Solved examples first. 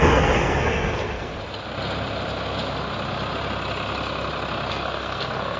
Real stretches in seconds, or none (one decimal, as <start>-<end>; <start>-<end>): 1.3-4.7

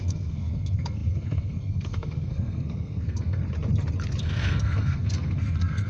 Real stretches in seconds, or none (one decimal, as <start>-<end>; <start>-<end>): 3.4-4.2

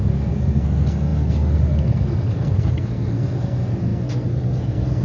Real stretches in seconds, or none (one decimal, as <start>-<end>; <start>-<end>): none